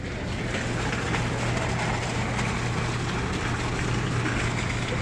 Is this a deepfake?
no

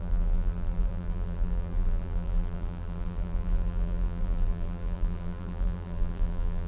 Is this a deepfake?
yes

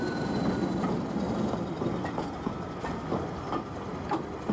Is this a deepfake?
no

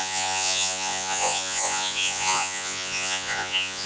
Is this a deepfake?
yes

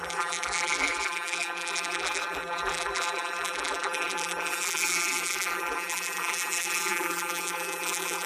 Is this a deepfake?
yes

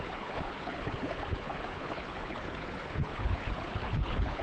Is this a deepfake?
yes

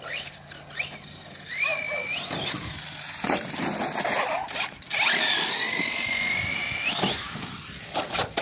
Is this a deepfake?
no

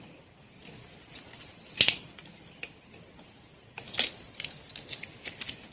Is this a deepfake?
no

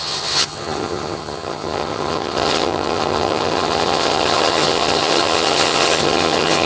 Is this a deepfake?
yes